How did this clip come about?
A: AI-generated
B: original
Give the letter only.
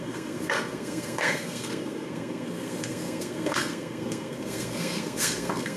A